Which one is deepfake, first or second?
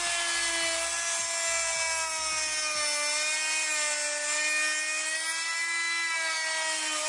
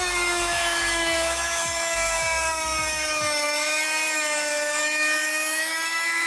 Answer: second